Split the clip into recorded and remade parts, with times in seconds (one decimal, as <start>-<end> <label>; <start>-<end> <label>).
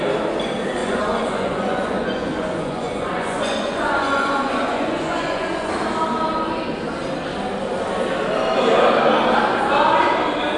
0.0-0.8 recorded; 0.8-5.7 remade; 5.7-10.6 recorded